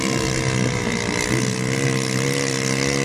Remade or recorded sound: recorded